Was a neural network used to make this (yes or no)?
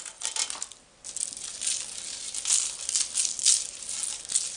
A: no